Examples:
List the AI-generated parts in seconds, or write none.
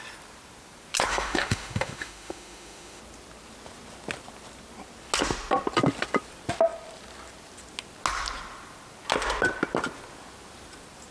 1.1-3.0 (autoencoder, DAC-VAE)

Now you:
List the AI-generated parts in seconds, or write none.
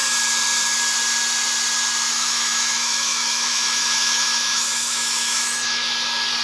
2.1-5.9 (autoencoder, DAC-VAE)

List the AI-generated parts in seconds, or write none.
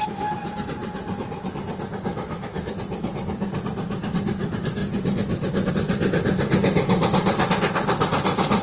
2.1-2.7 (autoencoder, DAC-VAE)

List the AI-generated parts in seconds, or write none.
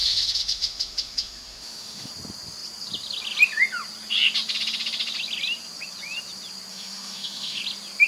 0.0-2.1 (autoencoder, DAC-VAE); 6.7-7.6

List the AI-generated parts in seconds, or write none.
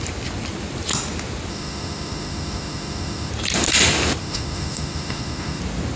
1.5-3.3 (autoencoder, DAC-VAE); 4.2-5.6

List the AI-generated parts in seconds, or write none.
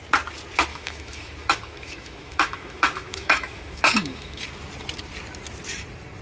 0.7-4.4 (autoencoder, DAC-VAE)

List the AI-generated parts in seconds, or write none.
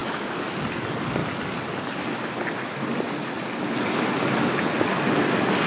0.0-0.5 (autoencoder, DAC-VAE)